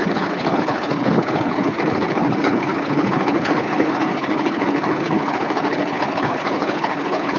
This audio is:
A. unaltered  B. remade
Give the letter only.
B